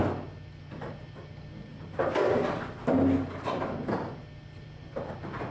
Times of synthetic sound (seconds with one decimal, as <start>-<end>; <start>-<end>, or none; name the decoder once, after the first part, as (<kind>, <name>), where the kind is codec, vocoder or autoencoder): none